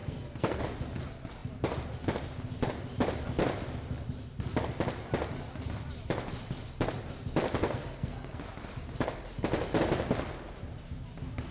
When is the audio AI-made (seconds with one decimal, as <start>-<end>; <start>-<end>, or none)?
0.0-0.6; 7.6-8.4